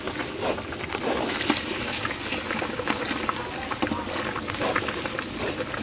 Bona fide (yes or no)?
yes